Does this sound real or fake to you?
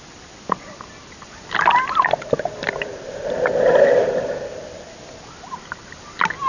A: real